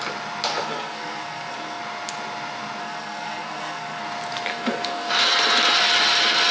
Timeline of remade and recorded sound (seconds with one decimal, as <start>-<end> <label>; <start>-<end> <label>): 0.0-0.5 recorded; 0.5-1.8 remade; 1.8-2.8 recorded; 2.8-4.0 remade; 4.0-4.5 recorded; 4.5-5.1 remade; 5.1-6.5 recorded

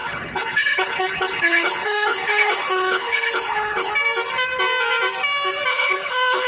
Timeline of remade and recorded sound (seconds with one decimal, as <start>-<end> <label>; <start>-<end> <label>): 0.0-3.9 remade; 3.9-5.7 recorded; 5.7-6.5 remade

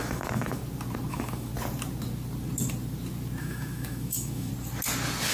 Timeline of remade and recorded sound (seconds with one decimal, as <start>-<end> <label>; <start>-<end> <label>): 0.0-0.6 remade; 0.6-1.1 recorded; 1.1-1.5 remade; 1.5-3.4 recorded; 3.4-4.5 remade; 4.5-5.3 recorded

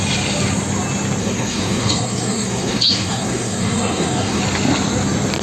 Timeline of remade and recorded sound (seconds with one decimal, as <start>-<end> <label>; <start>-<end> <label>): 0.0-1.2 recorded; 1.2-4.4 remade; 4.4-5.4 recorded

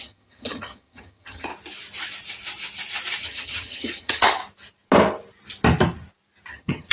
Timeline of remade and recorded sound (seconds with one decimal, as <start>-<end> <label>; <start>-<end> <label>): 0.0-1.5 remade; 1.5-3.2 recorded; 3.2-4.4 remade; 4.4-6.5 recorded; 6.5-6.9 remade